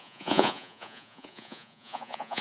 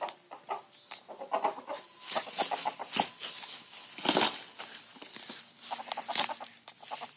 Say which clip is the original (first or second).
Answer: second